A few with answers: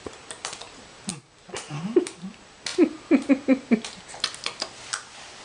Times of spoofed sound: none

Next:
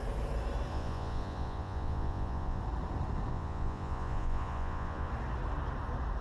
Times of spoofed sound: 0.7-2.6 (vocoder, Vocos); 3.3-5.1

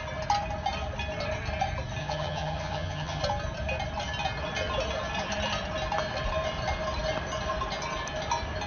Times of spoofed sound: 2.0-3.2 (vocoder, HiFi-GAN)

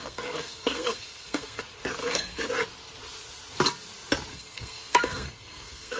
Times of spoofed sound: 0.0-1.6 (codec, SNAC); 2.0-2.5; 4.3-6.0

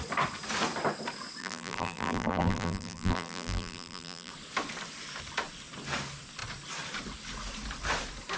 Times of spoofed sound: 1.4-4.3 (vocoder, BigVGAN v2)

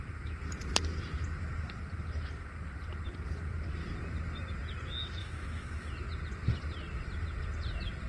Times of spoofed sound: 5.2-5.9 (autoencoder, DAC-VAE)

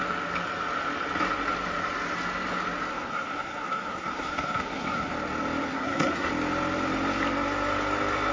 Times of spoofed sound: 2.9-5.1 (codec, SNAC); 5.7-6.3